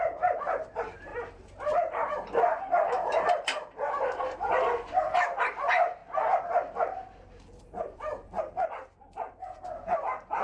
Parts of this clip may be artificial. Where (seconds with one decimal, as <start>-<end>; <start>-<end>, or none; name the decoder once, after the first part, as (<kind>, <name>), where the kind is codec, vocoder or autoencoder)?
0.0-6.0 (vocoder, BigVGAN v2); 7.6-10.4